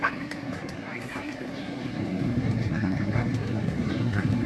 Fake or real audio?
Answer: fake